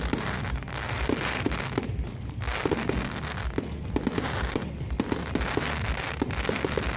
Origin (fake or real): real